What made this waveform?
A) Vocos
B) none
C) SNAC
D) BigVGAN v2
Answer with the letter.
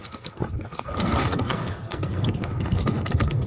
C